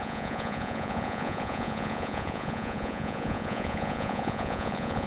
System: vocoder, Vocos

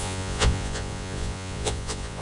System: vocoder, Vocos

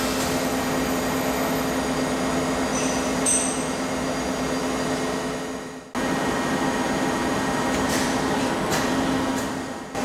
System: none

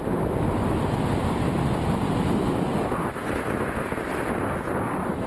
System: none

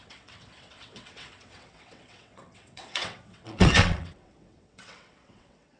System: vocoder, WaveNeXt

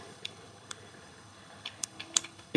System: codec, HILCodec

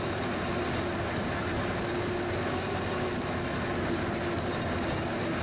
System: none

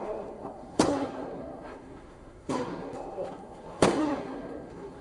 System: codec, SNAC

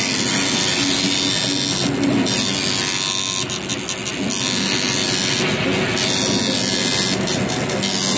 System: none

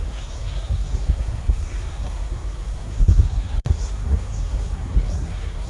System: codec, SNAC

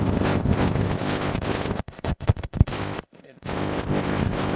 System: codec, ZipCodec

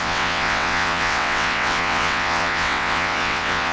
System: vocoder, WaveNeXt